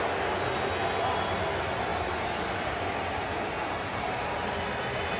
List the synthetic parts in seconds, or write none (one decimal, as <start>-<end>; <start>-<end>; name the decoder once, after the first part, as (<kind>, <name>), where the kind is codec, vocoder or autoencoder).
none